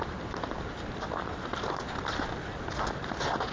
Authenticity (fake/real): real